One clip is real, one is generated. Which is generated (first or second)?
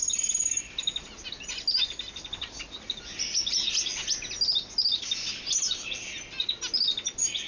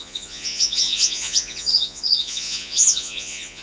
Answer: second